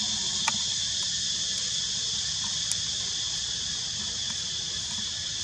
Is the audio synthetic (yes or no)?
no